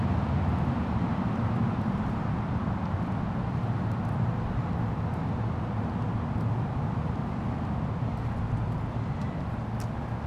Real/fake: real